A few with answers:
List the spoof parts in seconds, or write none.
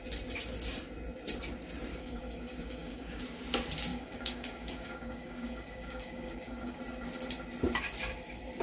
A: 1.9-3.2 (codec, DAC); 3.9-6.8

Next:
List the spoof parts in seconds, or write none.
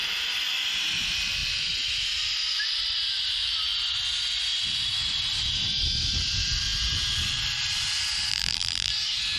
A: 8.3-8.9 (vocoder, BigVGAN v2)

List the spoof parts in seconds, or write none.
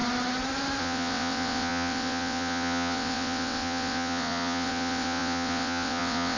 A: 0.8-6.4 (vocoder, WaveNeXt)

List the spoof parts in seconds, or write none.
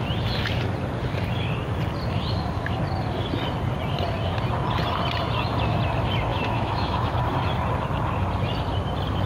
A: 6.3-7.2 (autoencoder, DAC-VAE)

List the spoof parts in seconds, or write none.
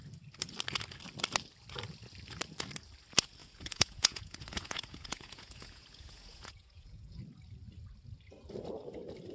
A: 3.4-7.2 (vocoder, Vocos)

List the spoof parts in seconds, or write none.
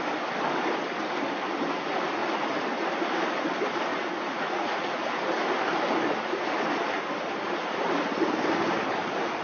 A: 3.9-5.2 (vocoder, Vocos)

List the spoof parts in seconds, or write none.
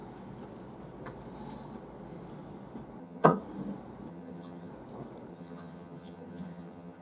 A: 3.0-3.4 (vocoder, HiFi-GAN); 4.1-4.7; 5.3-7.0